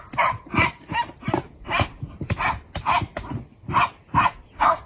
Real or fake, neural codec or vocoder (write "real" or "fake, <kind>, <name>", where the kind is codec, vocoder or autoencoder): real